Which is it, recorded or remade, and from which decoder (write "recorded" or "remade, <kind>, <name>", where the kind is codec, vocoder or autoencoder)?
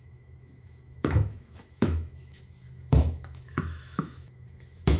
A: remade, autoencoder, DAC-VAE